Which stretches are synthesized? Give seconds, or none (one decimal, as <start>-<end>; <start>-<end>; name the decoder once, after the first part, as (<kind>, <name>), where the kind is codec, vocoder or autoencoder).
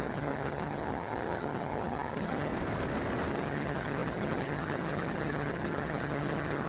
0.0-2.5 (vocoder, HiFi-GAN); 3.3-6.7